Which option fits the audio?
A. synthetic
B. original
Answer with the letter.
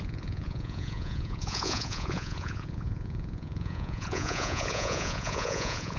A